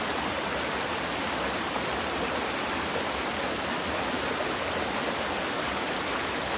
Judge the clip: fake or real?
real